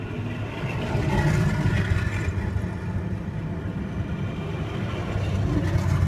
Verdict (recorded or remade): recorded